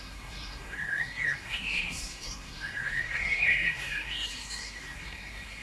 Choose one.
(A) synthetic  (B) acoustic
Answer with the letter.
A